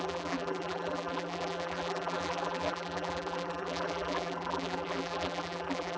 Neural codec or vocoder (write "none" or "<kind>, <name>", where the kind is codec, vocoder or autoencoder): vocoder, BigVGAN v2